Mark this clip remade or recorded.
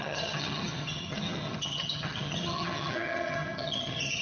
remade